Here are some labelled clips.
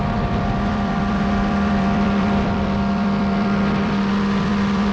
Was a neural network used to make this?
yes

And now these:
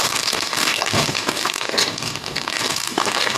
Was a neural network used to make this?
yes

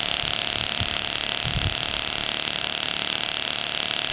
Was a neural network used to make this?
no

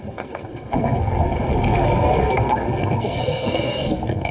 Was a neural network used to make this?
yes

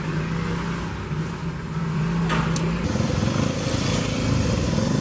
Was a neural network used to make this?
no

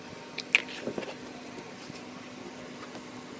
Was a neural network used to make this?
no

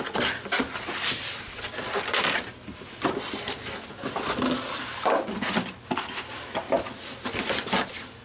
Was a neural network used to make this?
no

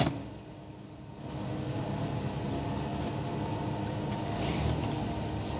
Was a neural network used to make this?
no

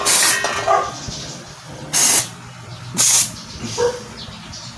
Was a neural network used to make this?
no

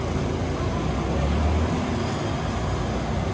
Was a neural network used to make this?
no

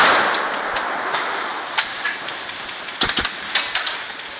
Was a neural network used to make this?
no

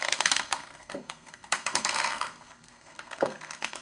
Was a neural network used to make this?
yes